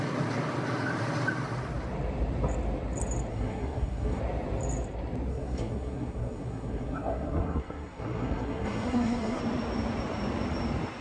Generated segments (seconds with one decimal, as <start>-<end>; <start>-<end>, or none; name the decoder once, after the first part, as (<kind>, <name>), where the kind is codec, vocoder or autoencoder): 3.3-4.2 (codec, SNAC); 5.3-9.4